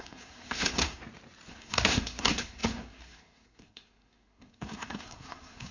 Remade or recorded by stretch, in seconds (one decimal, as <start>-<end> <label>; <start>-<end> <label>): 0.0-1.0 remade; 1.0-1.5 recorded; 1.5-5.7 remade